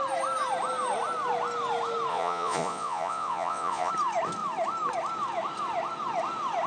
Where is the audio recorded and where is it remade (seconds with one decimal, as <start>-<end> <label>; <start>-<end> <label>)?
0.0-2.1 recorded; 2.1-3.9 remade; 3.9-6.7 recorded